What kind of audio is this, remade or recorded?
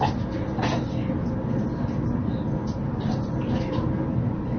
recorded